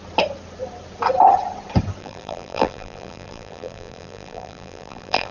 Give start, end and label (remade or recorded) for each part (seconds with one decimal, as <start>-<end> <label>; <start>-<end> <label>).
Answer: 0.0-2.0 recorded; 2.0-5.3 remade